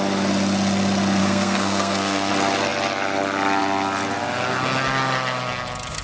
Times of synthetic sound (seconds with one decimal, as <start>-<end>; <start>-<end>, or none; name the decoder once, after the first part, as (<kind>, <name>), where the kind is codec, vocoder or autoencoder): 1.2-2.3 (codec, SNAC)